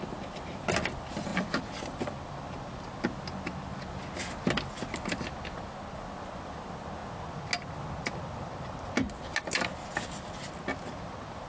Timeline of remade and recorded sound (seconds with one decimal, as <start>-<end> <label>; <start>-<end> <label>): 0.0-11.5 recorded